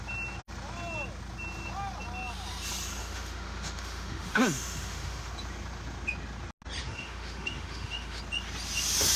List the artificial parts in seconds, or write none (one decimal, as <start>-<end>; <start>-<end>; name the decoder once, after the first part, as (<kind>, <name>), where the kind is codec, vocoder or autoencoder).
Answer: 3.0-5.3 (autoencoder, DAC-VAE); 6.8-8.2